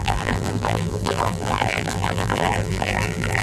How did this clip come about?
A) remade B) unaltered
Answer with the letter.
A